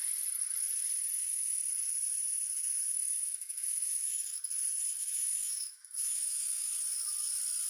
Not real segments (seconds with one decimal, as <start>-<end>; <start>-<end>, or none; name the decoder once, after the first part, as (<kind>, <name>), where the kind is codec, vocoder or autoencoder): 1.2-1.7 (autoencoder, DAC-VAE); 2.9-4.5; 5.0-6.7